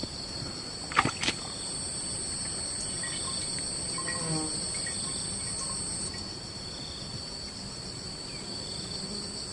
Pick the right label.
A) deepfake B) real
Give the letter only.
B